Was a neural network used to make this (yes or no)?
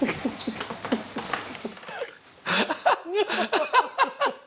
no